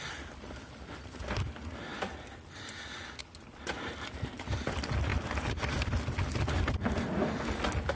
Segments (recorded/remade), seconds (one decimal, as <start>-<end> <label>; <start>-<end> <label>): 0.0-8.0 recorded

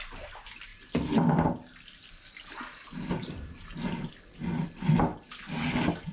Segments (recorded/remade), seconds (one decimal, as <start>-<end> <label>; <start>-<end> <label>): 0.0-6.1 recorded

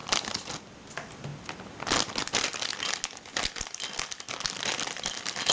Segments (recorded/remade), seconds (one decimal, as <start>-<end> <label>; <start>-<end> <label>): 0.0-5.5 recorded

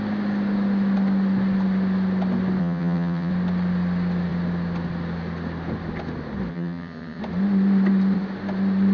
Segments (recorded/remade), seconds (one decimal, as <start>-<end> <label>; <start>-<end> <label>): 0.0-2.6 recorded; 2.6-3.3 remade; 3.3-6.5 recorded; 6.5-7.2 remade; 7.2-8.9 recorded

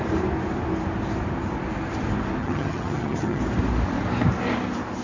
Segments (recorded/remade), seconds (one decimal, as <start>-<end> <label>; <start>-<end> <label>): 0.0-2.4 recorded; 2.4-3.4 remade; 3.4-5.0 recorded

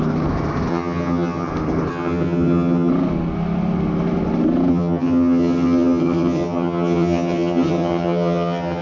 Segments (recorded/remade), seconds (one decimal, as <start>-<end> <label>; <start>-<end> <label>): 0.0-0.7 recorded; 0.7-1.5 remade; 1.5-1.9 recorded; 1.9-2.9 remade; 2.9-4.7 recorded; 4.7-8.8 remade

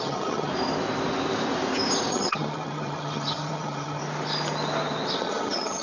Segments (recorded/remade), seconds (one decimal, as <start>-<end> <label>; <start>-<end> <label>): 0.0-0.5 remade; 0.5-2.1 recorded; 2.1-4.0 remade; 4.0-5.2 recorded; 5.2-5.8 remade